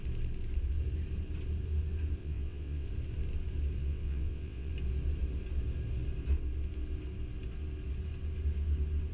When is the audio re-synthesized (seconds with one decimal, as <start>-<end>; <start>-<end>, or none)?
2.2-2.9; 3.8-4.7